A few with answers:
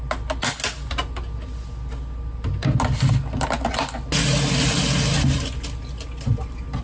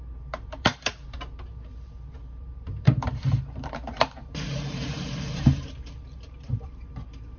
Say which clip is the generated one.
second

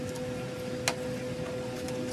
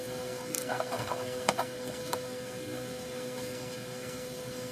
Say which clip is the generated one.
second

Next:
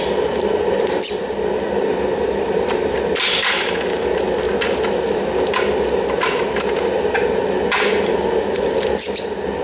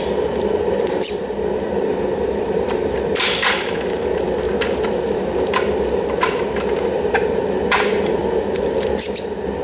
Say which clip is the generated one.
second